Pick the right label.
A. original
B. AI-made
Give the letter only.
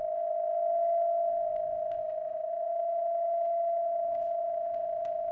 B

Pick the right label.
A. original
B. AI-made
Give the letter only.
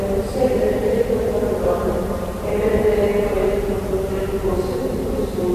B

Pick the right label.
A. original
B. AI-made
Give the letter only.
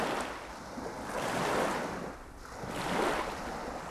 A